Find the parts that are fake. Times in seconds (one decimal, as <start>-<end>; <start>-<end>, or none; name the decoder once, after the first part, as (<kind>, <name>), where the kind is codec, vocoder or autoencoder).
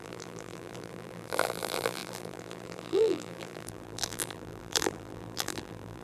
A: 0.0-6.0 (vocoder, BigVGAN v2)